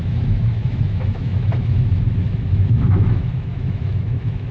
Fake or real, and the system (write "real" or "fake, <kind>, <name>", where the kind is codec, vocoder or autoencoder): fake, autoencoder, DAC-VAE